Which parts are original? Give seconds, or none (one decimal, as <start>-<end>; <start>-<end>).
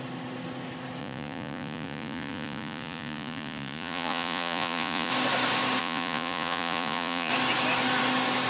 0.0-1.0; 5.1-5.8; 7.3-8.5